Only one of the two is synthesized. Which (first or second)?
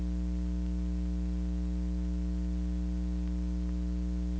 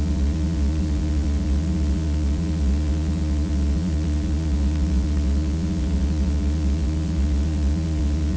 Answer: second